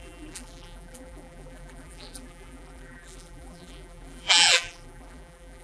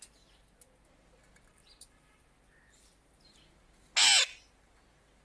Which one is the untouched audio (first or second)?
second